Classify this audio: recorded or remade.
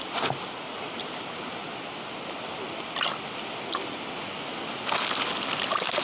recorded